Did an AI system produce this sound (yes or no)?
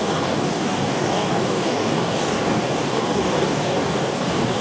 yes